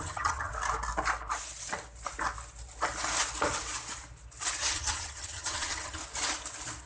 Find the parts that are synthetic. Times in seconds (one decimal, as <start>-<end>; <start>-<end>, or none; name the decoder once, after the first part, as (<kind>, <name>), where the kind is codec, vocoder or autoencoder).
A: 0.0-0.5 (vocoder, HiFi-GAN); 4.6-6.0